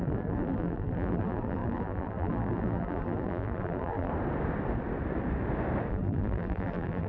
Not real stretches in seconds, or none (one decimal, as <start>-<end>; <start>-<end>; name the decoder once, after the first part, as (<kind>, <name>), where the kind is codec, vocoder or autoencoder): 0.0-4.1 (vocoder, BigVGAN v2); 5.9-7.1